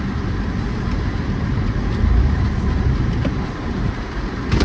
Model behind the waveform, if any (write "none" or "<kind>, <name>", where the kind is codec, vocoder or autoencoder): vocoder, BigVGAN v2